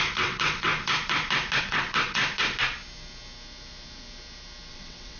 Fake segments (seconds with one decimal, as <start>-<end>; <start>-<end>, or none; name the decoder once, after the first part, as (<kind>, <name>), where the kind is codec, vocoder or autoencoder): 0.0-0.7 (vocoder, WaveNeXt); 1.6-2.2; 4.7-5.2